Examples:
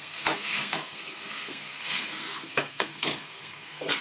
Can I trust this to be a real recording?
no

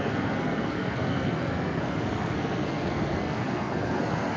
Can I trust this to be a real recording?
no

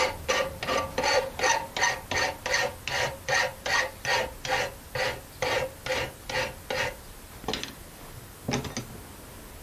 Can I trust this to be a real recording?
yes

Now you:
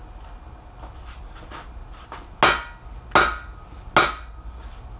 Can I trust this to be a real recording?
yes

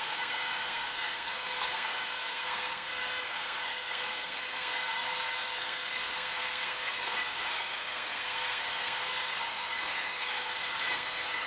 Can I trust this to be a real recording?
no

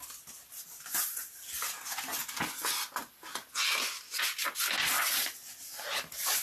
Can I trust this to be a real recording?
yes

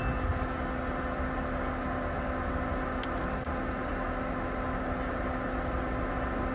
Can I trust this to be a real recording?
yes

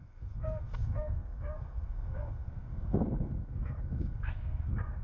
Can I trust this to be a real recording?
no